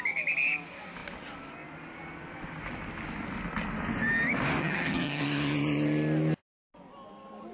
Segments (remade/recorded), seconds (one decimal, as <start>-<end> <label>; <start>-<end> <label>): 0.0-4.6 recorded; 4.6-5.2 remade; 5.2-7.5 recorded